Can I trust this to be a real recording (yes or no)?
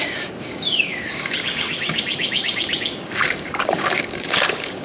no